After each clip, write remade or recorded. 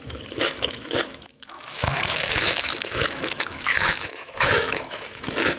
remade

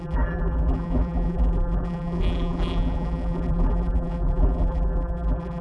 remade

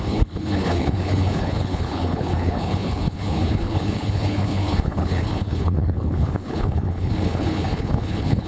remade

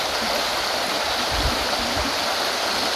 recorded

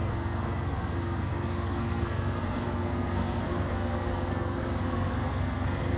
remade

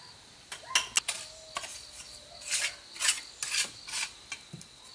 recorded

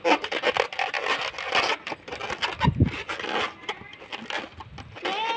recorded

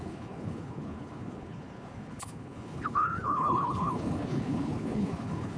remade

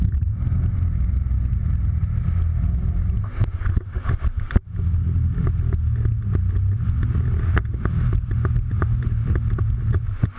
recorded